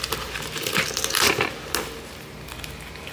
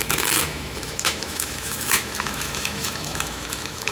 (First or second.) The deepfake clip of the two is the second